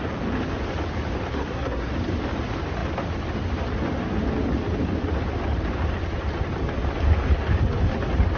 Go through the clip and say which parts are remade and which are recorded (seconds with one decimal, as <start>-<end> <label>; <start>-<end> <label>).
0.0-1.3 recorded; 1.3-1.9 remade; 1.9-8.4 recorded